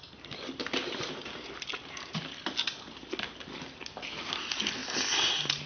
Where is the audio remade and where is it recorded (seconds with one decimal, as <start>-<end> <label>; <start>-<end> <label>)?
0.0-5.7 recorded

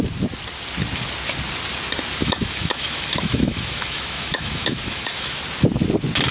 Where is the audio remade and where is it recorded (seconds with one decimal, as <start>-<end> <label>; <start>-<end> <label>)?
0.0-2.2 recorded; 2.2-5.4 remade; 5.4-6.3 recorded

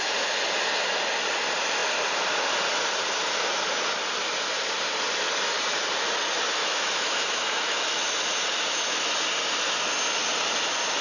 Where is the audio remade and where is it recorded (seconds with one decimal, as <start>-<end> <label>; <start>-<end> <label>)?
0.0-6.6 recorded; 6.6-8.0 remade; 8.0-11.0 recorded

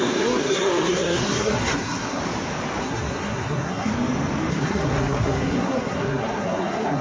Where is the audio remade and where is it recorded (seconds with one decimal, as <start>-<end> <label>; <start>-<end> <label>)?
0.0-2.2 remade; 2.2-2.8 recorded; 2.8-3.9 remade; 3.9-4.5 recorded; 4.5-7.0 remade